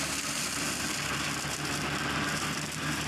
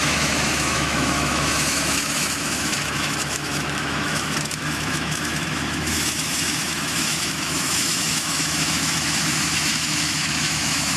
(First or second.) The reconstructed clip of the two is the second